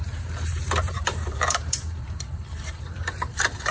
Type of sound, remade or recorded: remade